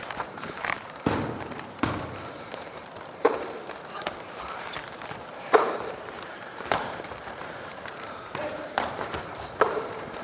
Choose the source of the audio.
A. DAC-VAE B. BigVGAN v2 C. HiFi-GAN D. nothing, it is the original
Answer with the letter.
B